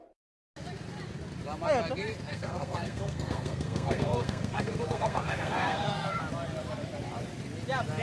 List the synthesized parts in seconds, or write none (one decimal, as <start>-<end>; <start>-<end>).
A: 2.3-6.2

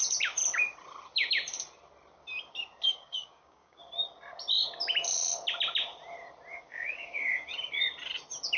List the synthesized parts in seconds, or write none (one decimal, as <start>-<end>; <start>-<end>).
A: 2.9-3.8; 6.5-7.5

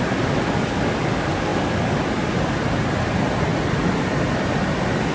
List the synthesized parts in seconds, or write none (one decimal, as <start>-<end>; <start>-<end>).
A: none

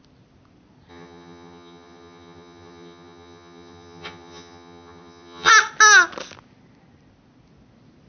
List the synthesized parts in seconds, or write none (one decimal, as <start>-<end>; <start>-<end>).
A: 0.9-5.5

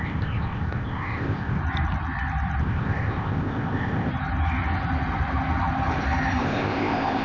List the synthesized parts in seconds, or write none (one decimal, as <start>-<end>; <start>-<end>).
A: 0.0-1.6; 2.6-4.1; 6.4-7.2

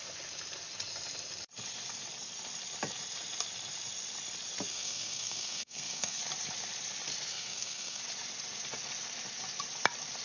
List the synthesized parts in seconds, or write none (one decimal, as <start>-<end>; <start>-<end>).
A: 4.7-6.2; 7.3-8.0